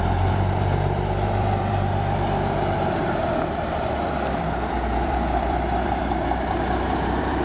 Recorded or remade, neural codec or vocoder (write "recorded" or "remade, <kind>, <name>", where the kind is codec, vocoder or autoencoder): remade, vocoder, BigVGAN v2